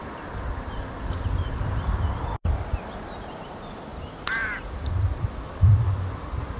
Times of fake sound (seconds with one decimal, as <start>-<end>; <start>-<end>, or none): 0.0-1.6; 3.9-5.8